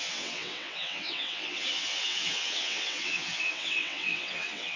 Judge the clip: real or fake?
fake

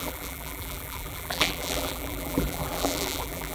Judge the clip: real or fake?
fake